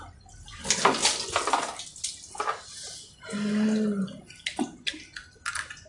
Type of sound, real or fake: real